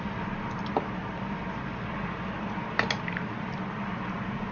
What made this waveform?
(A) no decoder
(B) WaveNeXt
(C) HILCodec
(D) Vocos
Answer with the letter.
A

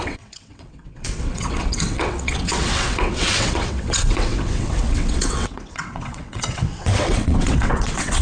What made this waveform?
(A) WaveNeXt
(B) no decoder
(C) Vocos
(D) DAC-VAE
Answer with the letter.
A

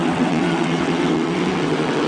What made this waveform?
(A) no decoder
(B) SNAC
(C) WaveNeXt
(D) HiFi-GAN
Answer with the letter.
C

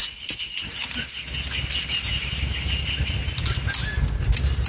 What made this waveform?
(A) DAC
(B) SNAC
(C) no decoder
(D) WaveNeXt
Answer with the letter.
C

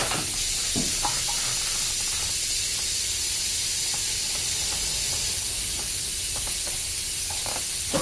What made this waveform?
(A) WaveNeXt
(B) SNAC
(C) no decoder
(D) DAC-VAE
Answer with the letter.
C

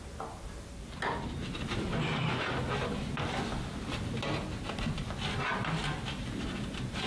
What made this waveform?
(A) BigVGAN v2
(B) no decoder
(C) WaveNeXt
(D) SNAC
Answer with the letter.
B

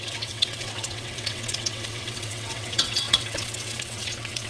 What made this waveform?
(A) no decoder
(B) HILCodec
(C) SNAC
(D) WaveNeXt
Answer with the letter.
D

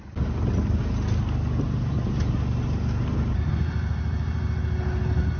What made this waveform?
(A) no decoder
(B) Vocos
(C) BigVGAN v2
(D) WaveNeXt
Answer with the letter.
A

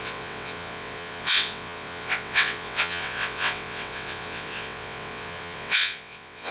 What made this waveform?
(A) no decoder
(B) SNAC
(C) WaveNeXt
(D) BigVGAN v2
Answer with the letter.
C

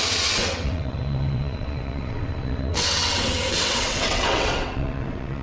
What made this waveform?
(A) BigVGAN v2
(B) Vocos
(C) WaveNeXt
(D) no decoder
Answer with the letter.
C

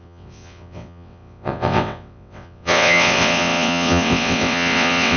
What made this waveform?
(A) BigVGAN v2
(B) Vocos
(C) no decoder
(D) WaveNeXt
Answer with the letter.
D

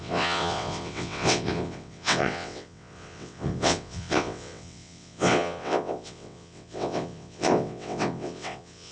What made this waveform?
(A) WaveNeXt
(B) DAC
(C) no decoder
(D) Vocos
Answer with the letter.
A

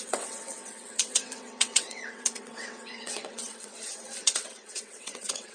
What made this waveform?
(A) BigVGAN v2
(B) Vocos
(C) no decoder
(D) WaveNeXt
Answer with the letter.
D